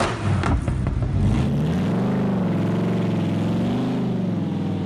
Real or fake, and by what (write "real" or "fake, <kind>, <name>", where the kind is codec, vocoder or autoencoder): real